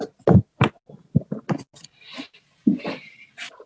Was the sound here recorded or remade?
recorded